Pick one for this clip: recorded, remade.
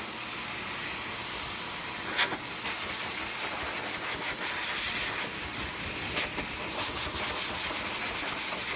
recorded